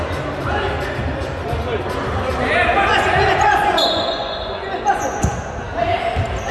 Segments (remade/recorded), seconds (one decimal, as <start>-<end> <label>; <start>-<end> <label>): 0.0-2.9 recorded; 2.9-5.4 remade; 5.4-6.5 recorded